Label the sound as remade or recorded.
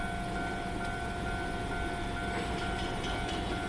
recorded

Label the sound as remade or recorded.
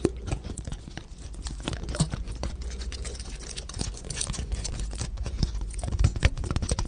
remade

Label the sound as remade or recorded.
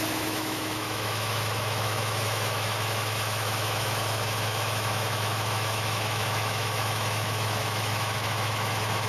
remade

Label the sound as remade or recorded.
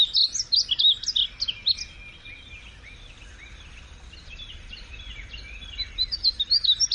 recorded